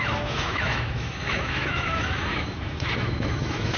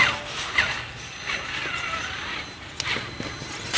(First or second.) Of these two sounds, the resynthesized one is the first